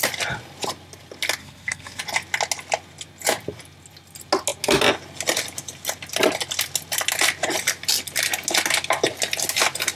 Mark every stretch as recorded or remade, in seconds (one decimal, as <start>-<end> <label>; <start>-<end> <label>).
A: 0.0-1.4 recorded; 1.4-2.0 remade; 2.0-10.0 recorded